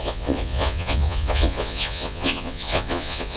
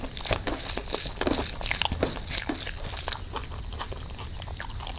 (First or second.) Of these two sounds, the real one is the second